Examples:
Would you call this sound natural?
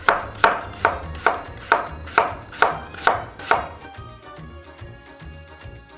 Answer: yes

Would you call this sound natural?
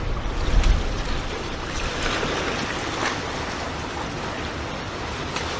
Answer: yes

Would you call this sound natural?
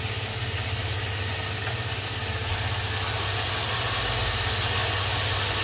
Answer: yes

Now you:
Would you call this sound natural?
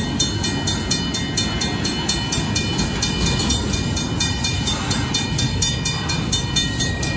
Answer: yes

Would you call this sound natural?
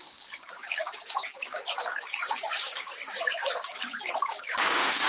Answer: no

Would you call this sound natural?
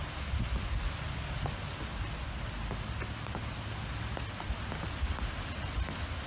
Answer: yes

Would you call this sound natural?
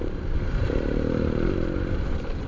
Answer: yes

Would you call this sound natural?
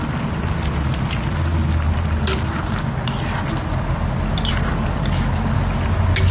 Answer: yes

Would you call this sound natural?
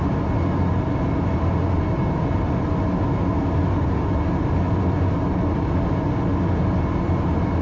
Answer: yes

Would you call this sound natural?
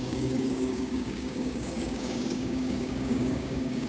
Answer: no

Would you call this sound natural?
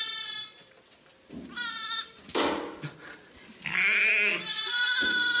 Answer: yes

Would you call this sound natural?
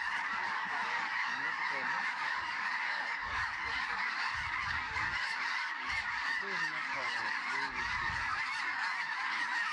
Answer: no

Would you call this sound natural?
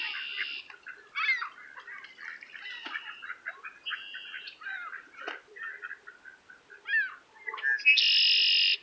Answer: yes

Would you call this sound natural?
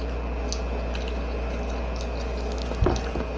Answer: yes